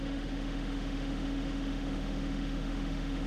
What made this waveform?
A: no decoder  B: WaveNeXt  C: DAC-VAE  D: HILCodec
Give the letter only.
C